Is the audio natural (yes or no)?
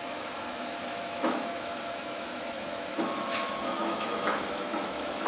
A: no